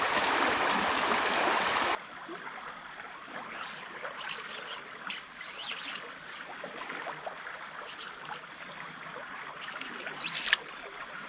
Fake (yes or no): no